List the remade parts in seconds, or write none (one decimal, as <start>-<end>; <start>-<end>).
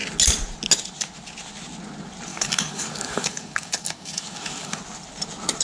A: 2.3-4.8